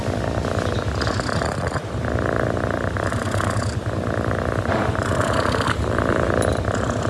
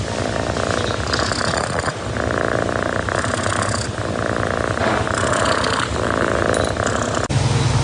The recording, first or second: second